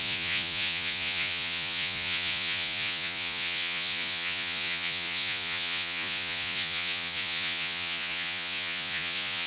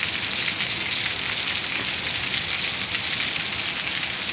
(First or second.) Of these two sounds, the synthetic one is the first